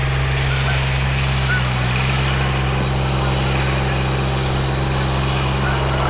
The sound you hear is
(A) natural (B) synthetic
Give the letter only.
A